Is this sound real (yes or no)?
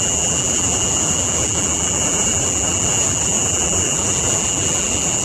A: no